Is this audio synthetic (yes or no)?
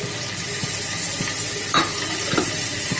yes